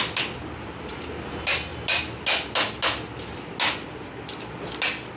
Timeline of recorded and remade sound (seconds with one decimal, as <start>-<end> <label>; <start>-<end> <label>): 0.0-5.2 recorded